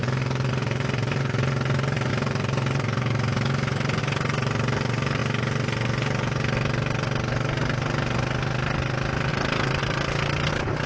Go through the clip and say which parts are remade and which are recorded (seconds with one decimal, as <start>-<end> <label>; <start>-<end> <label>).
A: 0.0-5.2 remade; 5.2-9.3 recorded; 9.3-9.8 remade; 9.8-10.5 recorded; 10.5-10.9 remade

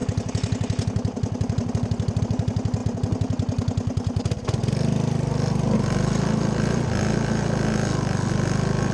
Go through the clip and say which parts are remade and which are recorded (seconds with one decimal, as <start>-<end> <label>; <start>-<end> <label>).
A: 0.0-8.9 recorded

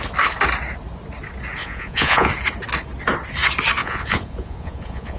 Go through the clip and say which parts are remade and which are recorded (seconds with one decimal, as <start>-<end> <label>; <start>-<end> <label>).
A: 0.0-1.6 recorded; 1.6-2.3 remade; 2.3-3.8 recorded; 3.8-5.2 remade

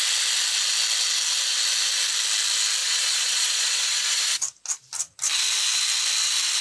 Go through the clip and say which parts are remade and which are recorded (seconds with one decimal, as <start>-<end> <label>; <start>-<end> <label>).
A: 0.0-2.8 recorded; 2.8-4.4 remade; 4.4-6.6 recorded

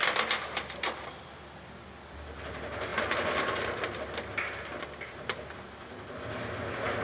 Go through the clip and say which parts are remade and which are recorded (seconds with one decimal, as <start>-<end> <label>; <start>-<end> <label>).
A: 0.0-7.0 recorded

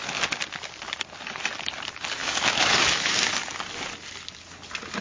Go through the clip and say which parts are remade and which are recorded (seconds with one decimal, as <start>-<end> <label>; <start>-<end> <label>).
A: 0.0-2.2 recorded; 2.2-3.2 remade; 3.2-5.0 recorded